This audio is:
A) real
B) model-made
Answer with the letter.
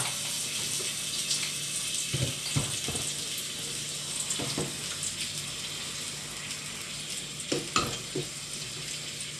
A